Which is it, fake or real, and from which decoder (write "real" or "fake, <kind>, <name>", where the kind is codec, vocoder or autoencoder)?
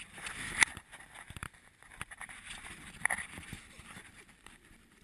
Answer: fake, vocoder, BigVGAN v2